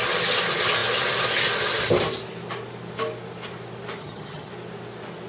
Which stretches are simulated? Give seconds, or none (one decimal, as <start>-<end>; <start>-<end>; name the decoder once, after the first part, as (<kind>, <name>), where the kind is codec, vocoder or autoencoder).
4.0-4.5 (vocoder, HiFi-GAN)